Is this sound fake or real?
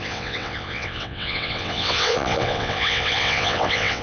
fake